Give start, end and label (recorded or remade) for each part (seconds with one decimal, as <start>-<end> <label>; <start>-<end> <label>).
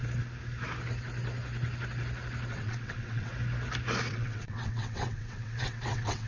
0.0-2.5 recorded; 2.5-3.3 remade; 3.3-4.1 recorded; 4.1-6.3 remade